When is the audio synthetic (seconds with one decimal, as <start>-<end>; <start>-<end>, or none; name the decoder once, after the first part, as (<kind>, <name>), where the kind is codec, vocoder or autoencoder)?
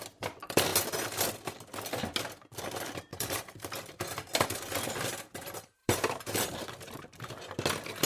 3.1-4.0 (vocoder, BigVGAN v2); 5.8-7.4